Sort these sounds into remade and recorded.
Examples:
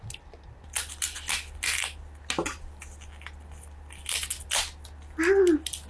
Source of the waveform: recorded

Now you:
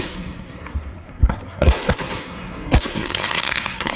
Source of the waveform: remade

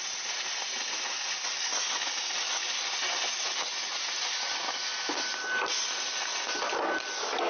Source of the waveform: recorded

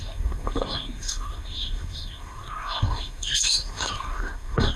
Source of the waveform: remade